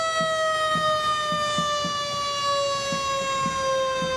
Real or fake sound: real